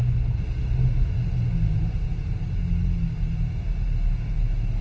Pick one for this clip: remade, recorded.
recorded